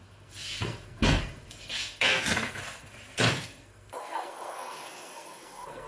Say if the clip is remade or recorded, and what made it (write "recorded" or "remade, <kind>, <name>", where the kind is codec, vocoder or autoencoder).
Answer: remade, codec, SNAC